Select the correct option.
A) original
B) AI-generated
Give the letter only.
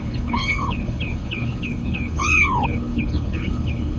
B